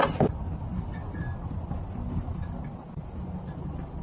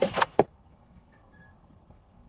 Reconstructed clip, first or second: second